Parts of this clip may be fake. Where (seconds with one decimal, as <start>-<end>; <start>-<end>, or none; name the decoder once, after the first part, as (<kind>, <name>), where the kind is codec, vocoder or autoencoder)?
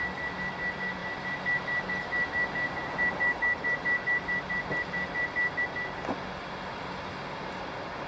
none